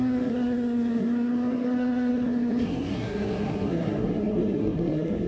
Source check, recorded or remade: remade